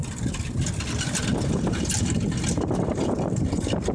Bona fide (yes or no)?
yes